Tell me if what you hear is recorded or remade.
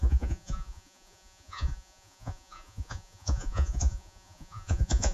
remade